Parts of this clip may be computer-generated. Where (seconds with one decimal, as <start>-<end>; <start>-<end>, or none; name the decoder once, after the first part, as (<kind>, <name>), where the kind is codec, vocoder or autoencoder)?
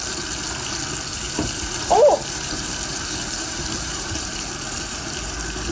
1.1-4.5 (vocoder, BigVGAN v2); 4.9-5.7